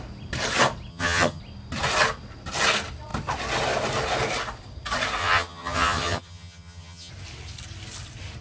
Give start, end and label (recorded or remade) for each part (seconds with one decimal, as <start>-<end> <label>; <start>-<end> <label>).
0.0-0.9 recorded; 0.9-1.4 remade; 1.4-5.2 recorded; 5.2-7.1 remade; 7.1-8.4 recorded